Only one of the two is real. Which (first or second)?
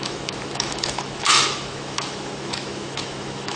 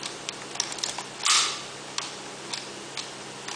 second